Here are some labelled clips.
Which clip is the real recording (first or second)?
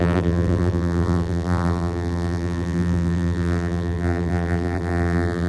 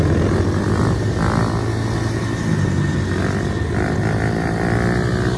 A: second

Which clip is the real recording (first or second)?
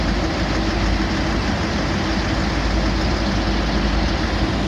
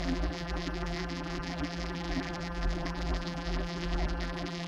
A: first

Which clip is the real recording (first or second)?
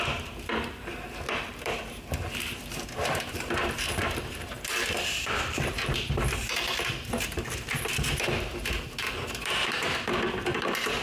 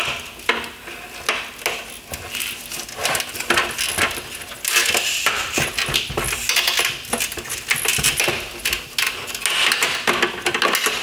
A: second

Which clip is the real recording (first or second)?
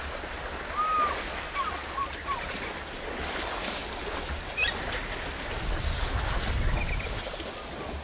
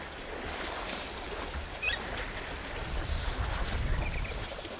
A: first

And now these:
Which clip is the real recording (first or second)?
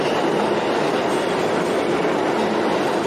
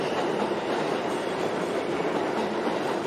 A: first